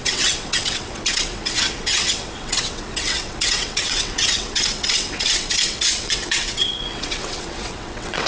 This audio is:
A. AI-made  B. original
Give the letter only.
A